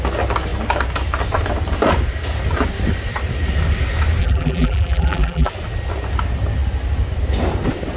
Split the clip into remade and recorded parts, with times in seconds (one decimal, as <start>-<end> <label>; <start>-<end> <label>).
0.0-4.2 recorded; 4.2-5.5 remade; 5.5-8.0 recorded

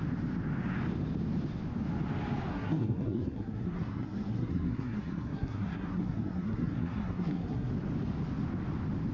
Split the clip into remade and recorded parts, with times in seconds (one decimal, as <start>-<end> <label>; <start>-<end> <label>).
0.0-2.5 recorded; 2.5-7.7 remade; 7.7-9.1 recorded